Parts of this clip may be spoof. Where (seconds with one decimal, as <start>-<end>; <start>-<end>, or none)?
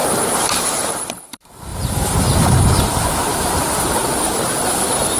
0.0-1.7; 2.2-3.2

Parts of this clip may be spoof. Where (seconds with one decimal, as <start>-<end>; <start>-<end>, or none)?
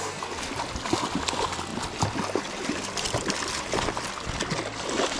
none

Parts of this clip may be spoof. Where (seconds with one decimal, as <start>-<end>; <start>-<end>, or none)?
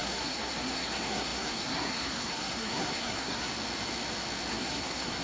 0.0-3.5; 4.5-5.2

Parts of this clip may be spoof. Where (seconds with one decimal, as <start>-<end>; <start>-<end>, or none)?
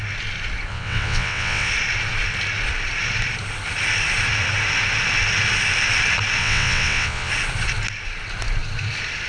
0.7-1.7; 6.4-7.3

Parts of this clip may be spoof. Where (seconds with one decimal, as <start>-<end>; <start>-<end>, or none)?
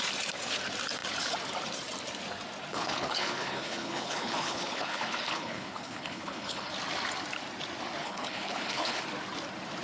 2.7-6.7; 8.0-9.0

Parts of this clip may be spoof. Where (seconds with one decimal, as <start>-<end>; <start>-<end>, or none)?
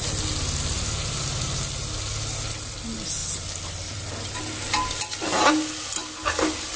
none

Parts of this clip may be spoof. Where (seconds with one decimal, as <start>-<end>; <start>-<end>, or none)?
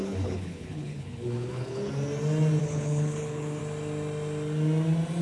0.0-1.9; 2.6-3.6